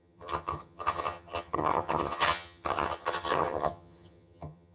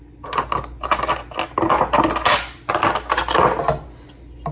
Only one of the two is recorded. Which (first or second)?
second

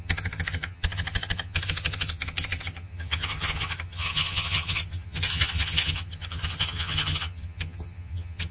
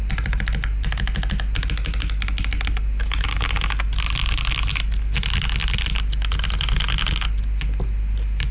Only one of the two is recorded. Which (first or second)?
second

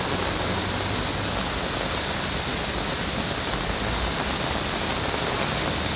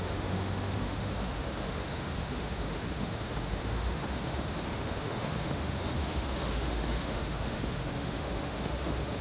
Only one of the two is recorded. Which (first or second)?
first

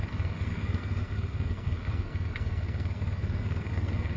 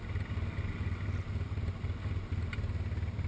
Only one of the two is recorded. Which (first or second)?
second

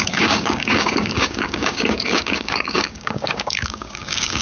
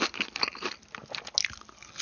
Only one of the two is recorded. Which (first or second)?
second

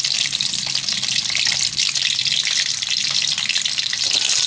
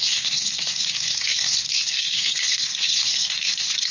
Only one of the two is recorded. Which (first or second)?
first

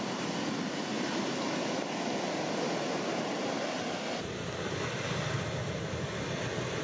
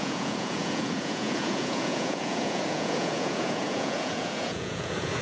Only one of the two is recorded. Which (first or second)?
first